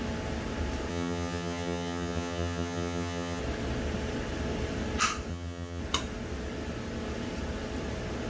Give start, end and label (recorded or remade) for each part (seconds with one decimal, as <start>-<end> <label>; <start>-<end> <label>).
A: 0.0-0.9 recorded; 0.9-3.4 remade; 3.4-5.3 recorded; 5.3-5.8 remade; 5.8-8.3 recorded